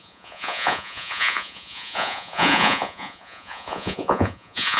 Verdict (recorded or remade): remade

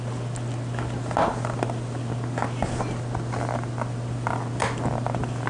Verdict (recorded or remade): recorded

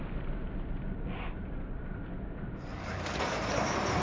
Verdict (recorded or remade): recorded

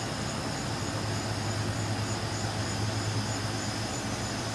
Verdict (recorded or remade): recorded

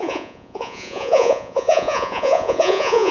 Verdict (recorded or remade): remade